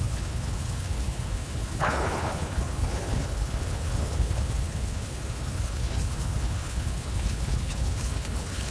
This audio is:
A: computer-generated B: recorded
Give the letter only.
A